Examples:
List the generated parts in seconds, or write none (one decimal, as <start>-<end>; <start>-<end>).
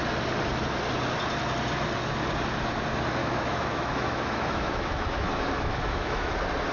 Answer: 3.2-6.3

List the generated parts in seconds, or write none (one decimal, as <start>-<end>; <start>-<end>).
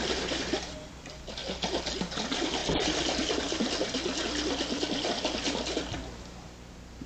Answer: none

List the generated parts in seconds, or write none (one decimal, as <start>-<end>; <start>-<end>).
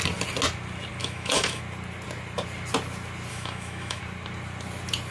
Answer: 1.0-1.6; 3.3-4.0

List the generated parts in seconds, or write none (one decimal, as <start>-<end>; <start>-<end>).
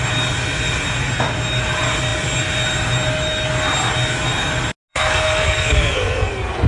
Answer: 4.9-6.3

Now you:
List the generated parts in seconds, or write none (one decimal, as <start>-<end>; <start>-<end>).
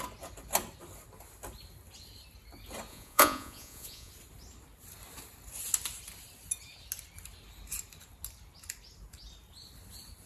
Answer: 2.9-4.1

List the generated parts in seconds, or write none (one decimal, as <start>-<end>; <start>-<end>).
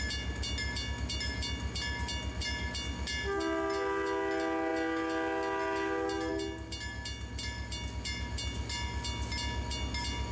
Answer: none